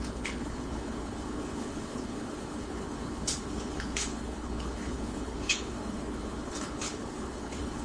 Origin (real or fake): fake